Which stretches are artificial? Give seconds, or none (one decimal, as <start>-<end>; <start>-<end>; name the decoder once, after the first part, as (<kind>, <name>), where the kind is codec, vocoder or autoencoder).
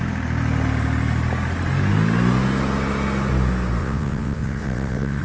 3.8-5.2 (vocoder, WaveNeXt)